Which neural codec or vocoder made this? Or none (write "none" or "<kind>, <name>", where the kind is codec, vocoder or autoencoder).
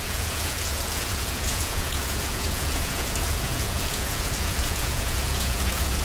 vocoder, Vocos